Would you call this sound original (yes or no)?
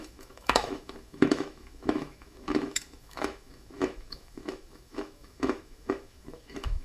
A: no